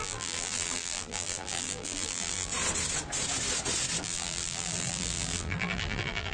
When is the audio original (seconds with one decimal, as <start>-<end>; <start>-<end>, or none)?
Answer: 2.5-4.0